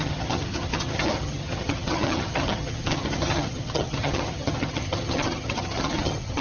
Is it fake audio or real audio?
fake